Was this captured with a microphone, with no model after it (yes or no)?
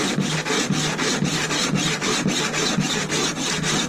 yes